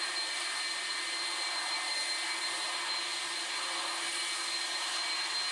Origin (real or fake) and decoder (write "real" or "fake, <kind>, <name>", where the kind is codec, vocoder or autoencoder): real